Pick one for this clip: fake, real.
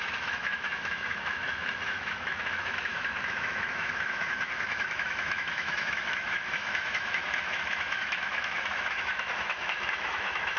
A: fake